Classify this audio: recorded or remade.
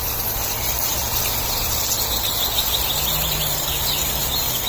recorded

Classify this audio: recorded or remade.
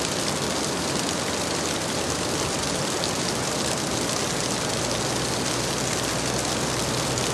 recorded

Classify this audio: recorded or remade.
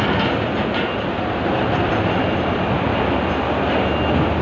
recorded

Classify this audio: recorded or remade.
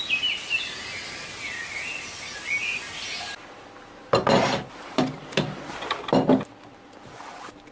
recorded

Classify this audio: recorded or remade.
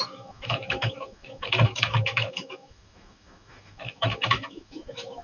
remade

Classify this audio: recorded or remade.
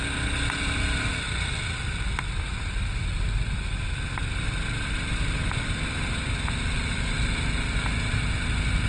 recorded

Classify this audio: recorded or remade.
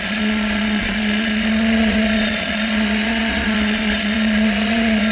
remade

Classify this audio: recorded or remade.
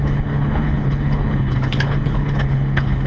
remade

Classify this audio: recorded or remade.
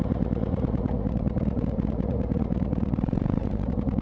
remade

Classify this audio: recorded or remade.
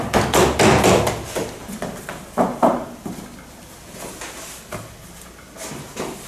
recorded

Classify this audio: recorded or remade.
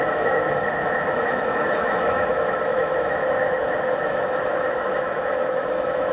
remade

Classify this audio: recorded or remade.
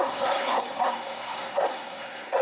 remade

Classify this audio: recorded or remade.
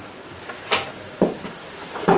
recorded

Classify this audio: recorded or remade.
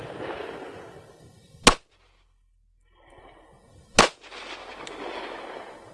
recorded